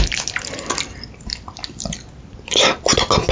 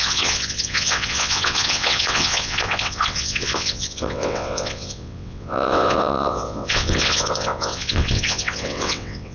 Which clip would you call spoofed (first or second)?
second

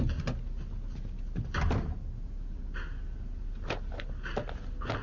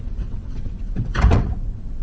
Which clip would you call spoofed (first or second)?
second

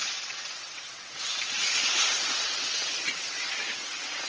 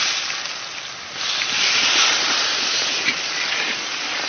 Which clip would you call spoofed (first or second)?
first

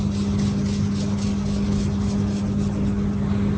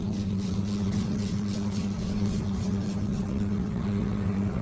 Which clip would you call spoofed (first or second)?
second